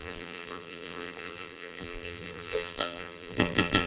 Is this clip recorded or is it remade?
remade